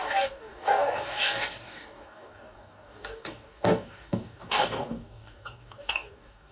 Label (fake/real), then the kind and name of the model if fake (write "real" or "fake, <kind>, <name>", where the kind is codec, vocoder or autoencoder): fake, codec, DAC